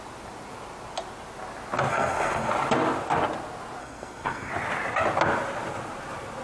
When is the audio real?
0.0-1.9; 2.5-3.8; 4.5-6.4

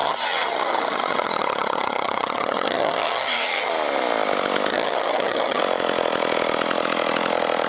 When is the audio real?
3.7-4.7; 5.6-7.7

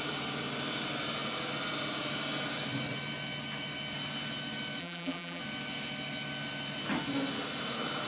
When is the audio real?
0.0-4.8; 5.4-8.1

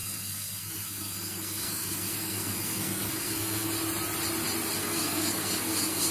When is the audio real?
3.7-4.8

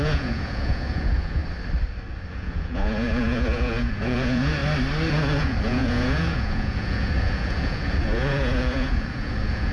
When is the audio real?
1.4-2.3; 4.6-5.1

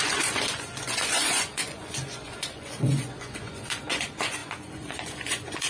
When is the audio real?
none

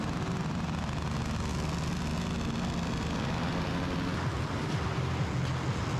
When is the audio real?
0.0-6.0

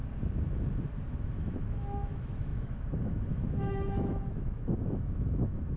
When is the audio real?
0.0-1.2